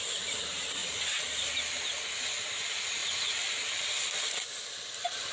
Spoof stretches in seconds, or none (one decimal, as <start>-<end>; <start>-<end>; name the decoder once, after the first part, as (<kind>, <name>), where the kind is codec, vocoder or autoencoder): none